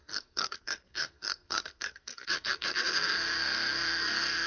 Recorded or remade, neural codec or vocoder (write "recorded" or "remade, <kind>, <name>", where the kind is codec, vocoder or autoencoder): remade, codec, SNAC